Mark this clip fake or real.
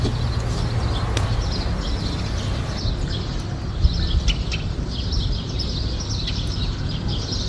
real